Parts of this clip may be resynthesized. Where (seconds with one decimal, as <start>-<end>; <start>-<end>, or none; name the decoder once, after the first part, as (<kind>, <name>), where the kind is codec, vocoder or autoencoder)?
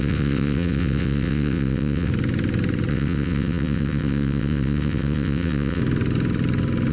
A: 0.0-2.1 (vocoder, WaveNeXt); 2.9-5.8